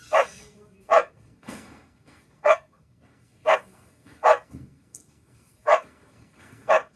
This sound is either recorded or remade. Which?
remade